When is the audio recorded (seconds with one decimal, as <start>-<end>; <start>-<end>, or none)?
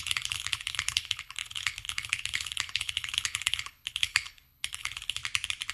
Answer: 5.2-5.7